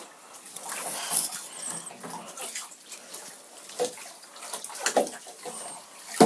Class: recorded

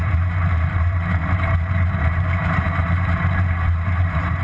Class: remade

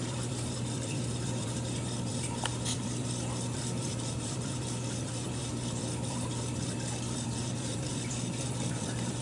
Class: remade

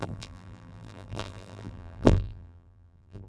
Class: remade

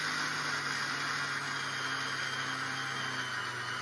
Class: recorded